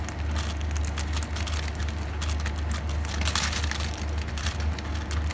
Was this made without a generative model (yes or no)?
yes